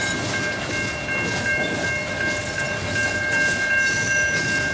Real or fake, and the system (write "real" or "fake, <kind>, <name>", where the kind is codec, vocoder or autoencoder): real